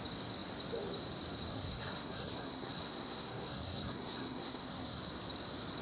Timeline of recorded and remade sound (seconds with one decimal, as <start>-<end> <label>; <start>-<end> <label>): 0.0-1.5 recorded; 1.5-5.0 remade; 5.0-5.8 recorded